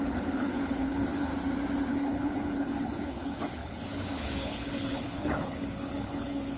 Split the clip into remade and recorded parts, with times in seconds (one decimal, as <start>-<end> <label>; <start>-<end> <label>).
0.0-1.3 remade; 1.3-1.9 recorded; 1.9-6.6 remade